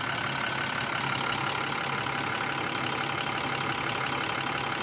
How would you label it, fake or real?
real